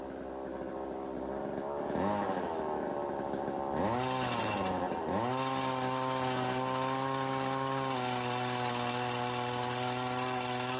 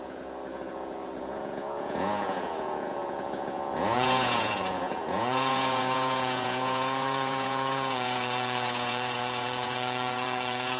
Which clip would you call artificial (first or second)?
second